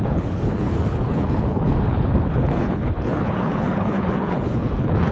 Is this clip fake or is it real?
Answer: fake